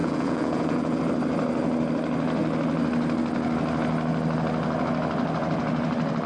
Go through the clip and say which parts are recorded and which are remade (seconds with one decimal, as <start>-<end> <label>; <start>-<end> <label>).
0.0-1.0 remade; 1.0-6.3 recorded